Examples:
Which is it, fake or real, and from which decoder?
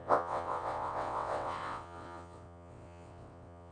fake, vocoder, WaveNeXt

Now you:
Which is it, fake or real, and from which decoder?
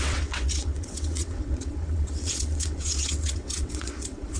fake, vocoder, WaveNeXt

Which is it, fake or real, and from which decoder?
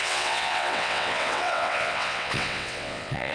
fake, vocoder, WaveNeXt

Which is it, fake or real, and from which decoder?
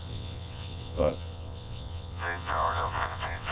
fake, vocoder, WaveNeXt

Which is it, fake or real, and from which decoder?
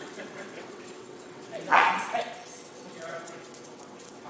fake, vocoder, WaveNeXt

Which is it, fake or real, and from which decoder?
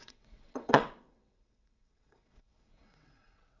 fake, vocoder, WaveNeXt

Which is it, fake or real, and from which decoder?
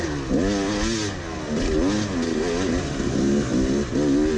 real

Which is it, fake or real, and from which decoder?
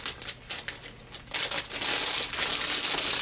real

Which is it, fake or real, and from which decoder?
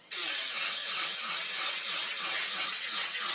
fake, vocoder, WaveNeXt